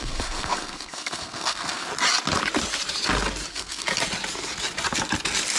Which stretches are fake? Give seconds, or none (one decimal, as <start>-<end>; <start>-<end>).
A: 0.0-1.9; 3.5-3.9